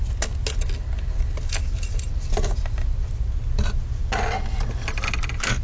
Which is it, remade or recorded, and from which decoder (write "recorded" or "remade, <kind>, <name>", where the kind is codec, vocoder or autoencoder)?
recorded